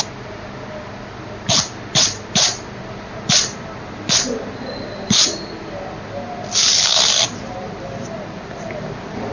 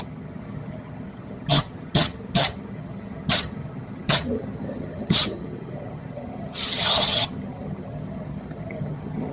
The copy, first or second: second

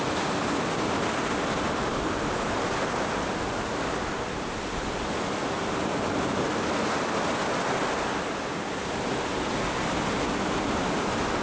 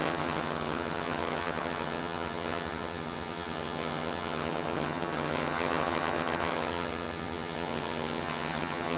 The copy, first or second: second